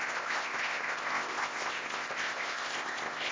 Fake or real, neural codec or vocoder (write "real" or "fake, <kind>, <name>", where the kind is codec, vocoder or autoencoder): fake, codec, ZipCodec